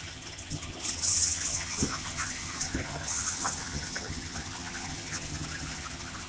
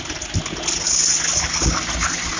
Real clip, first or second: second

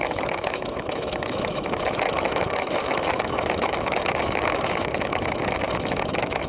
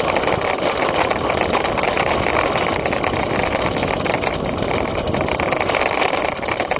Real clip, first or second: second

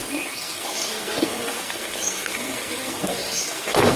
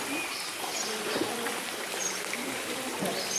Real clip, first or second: second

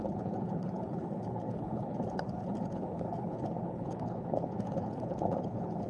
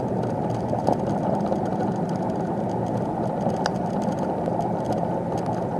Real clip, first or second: second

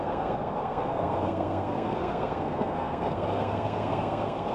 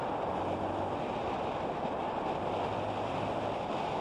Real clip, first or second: second